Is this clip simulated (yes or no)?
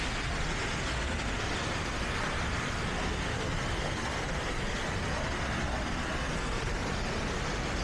no